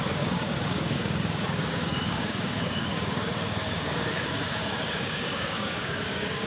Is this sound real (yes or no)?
no